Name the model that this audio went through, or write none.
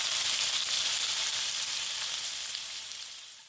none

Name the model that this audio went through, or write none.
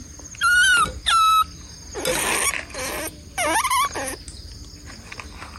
none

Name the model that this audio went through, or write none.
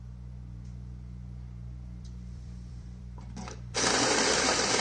vocoder, BigVGAN v2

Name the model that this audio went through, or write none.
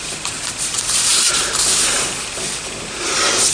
vocoder, BigVGAN v2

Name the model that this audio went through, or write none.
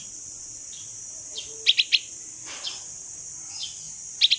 none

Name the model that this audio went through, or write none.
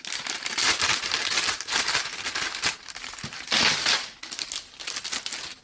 none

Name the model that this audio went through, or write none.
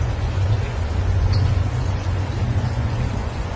vocoder, Vocos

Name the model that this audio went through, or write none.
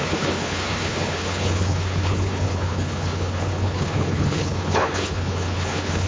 codec, HILCodec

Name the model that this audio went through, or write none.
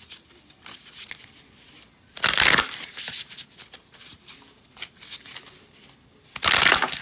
none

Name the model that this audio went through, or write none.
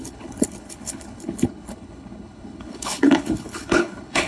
codec, HILCodec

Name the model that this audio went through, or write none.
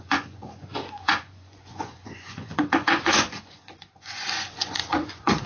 vocoder, Vocos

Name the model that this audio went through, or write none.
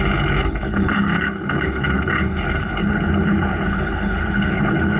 codec, HILCodec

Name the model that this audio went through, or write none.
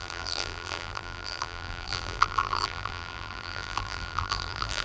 vocoder, BigVGAN v2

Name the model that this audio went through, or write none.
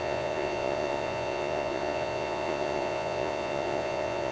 vocoder, Vocos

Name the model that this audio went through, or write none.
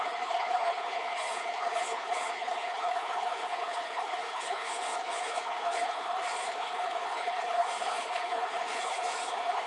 codec, HILCodec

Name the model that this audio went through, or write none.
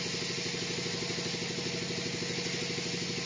none